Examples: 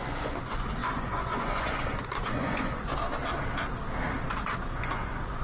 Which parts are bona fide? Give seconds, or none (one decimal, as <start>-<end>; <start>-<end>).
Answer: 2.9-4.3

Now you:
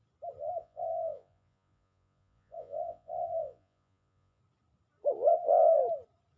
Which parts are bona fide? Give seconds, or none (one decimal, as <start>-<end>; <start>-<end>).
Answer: 0.0-0.6; 4.4-5.3; 5.8-6.4

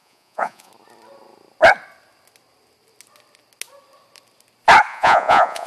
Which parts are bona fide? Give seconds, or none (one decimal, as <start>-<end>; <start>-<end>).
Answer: 0.7-4.9

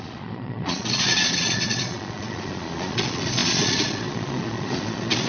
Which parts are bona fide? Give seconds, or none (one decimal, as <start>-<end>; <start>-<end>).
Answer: none